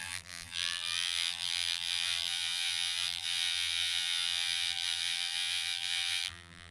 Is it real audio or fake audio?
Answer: fake